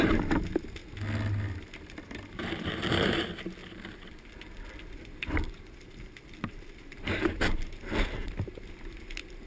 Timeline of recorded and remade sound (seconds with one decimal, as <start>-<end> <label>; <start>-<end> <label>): 0.0-0.8 remade; 0.8-2.0 recorded; 2.0-3.6 remade; 3.6-4.7 recorded; 4.7-9.5 remade